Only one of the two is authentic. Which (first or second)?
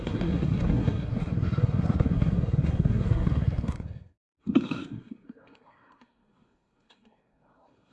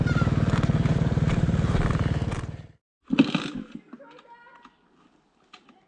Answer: second